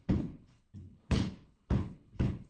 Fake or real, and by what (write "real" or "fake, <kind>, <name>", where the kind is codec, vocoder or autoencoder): fake, codec, HILCodec